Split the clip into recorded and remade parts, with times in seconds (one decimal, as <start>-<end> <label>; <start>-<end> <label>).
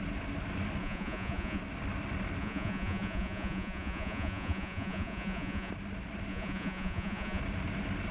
0.0-0.8 recorded; 0.8-1.6 remade; 1.6-2.4 recorded; 2.4-5.7 remade; 5.7-6.3 recorded; 6.3-7.4 remade; 7.4-8.1 recorded